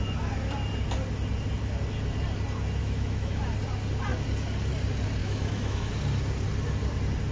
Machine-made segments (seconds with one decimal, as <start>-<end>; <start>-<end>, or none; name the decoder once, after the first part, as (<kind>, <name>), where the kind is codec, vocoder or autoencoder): 2.8-3.4 (autoencoder, DAC-VAE); 5.2-5.9